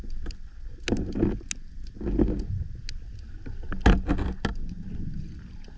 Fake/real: real